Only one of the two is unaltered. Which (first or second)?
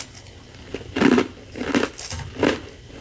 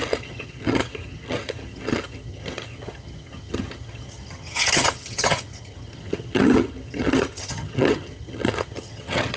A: first